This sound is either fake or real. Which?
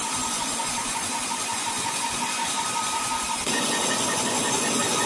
fake